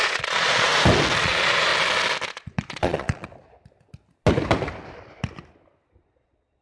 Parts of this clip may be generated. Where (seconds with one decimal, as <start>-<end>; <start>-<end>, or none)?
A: 0.0-0.7; 1.2-1.7; 2.3-3.3; 6.0-6.6